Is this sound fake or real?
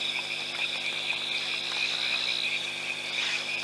real